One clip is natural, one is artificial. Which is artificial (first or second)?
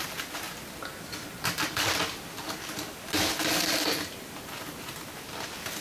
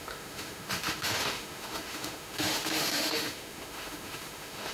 second